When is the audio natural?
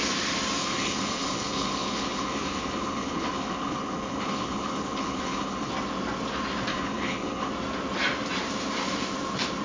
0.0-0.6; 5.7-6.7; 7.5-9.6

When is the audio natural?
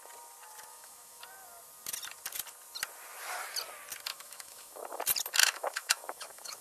0.0-0.7; 1.2-4.1; 5.0-5.4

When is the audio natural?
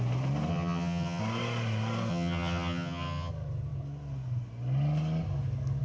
0.0-0.5; 1.2-2.1; 3.3-5.8